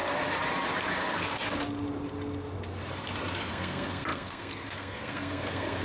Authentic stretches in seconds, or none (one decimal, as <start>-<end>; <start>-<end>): 0.0-3.5